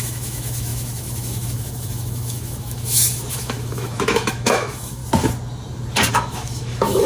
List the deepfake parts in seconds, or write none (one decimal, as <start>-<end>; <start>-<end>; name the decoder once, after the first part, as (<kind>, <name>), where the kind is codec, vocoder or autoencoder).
0.0-5.0 (autoencoder, DAC-VAE); 6.1-7.1